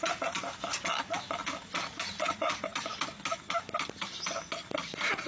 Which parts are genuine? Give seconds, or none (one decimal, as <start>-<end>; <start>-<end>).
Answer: 0.0-5.3